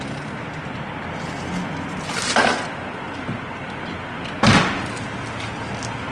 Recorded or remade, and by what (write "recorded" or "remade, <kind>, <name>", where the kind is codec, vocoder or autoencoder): recorded